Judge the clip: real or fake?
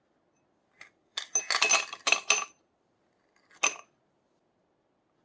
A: real